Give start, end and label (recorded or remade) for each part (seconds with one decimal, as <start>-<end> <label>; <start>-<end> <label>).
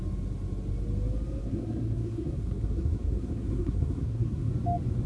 0.0-1.4 recorded; 1.4-4.5 remade; 4.5-5.1 recorded